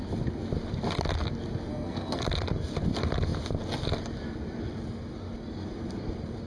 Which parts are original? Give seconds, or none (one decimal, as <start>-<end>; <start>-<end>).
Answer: 0.0-1.7; 2.2-6.5